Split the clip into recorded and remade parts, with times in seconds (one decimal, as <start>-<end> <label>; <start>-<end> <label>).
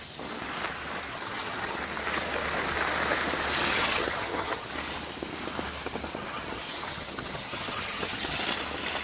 0.0-1.1 recorded; 1.1-1.8 remade; 1.8-3.7 recorded; 3.7-4.7 remade; 4.7-6.1 recorded; 6.1-8.4 remade; 8.4-9.0 recorded